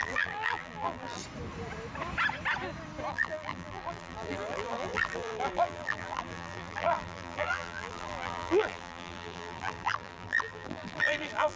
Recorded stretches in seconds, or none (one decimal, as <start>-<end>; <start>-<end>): 1.2-3.1